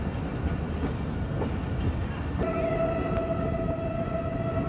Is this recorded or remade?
recorded